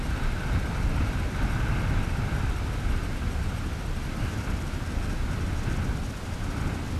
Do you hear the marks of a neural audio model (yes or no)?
no